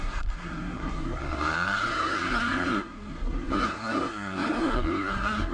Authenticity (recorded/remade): remade